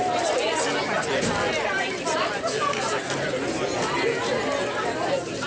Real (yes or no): yes